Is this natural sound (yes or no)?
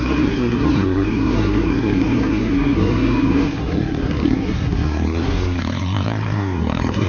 no